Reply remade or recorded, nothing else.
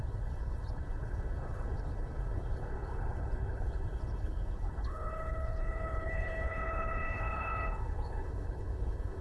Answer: remade